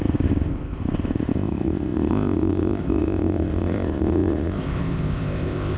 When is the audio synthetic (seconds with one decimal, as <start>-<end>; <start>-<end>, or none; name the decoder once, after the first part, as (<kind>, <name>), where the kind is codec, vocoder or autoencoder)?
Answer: 0.0-5.8 (codec, ZipCodec)